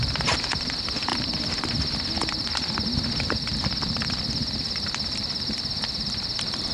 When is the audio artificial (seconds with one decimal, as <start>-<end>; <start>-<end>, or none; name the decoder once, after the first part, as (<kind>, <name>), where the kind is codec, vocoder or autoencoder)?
0.0-1.1 (vocoder, BigVGAN v2); 3.2-6.7